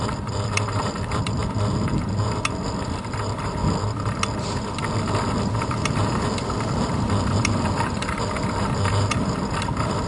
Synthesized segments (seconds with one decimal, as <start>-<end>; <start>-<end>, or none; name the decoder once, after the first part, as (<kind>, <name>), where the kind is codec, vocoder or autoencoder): 0.0-1.4 (vocoder, BigVGAN v2); 2.2-3.6; 5.6-10.1